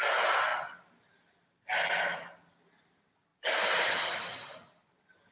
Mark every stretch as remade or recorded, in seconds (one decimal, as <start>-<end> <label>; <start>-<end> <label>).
0.0-5.3 recorded